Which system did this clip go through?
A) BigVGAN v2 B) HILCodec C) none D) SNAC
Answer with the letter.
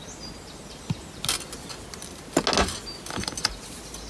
C